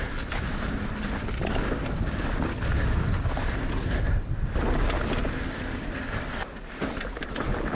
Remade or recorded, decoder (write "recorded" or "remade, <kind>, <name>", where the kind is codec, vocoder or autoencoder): recorded